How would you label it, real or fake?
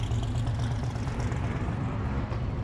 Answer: fake